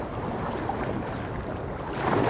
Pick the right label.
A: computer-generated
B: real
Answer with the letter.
B